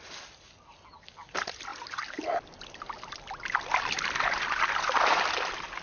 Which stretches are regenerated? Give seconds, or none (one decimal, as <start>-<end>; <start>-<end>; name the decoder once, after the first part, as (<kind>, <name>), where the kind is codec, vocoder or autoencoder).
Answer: none